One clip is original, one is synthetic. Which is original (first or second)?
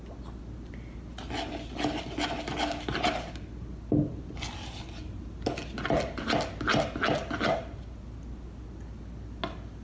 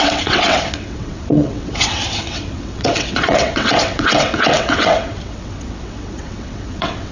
first